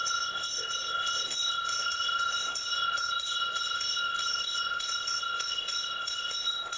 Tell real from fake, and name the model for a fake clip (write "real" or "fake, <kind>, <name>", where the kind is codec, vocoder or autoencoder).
fake, codec, ZipCodec